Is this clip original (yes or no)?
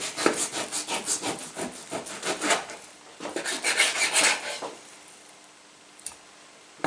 yes